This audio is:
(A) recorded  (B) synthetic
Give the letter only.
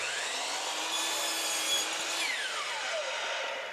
A